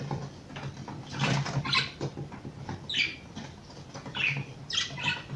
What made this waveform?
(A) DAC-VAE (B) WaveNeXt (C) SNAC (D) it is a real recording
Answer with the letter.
D